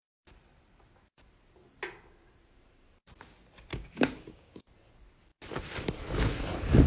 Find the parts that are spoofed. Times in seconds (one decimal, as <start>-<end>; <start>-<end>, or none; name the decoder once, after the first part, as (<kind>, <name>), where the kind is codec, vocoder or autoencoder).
3.7-4.6 (codec, DAC)